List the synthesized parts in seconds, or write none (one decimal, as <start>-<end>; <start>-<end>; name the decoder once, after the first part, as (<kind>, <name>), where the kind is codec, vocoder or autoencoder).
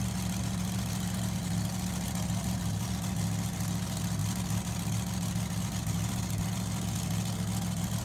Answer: none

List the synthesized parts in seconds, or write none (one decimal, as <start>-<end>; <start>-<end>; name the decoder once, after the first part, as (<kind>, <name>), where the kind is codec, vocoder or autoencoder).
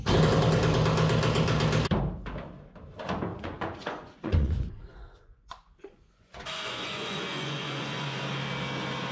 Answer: 3.3-8.2 (vocoder, Vocos)